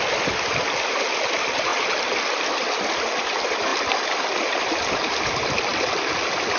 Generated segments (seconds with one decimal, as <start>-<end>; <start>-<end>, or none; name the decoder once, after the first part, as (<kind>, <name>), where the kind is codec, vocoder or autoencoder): 0.0-6.6 (vocoder, BigVGAN v2)